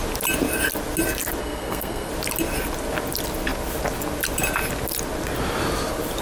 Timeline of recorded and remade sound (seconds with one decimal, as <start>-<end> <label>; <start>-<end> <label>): 0.0-1.4 recorded; 1.4-2.1 remade; 2.1-6.2 recorded